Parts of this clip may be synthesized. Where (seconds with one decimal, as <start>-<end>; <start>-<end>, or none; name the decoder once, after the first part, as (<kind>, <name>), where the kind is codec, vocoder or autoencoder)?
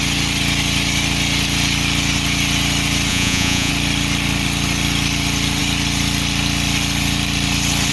3.1-3.7 (vocoder, Vocos)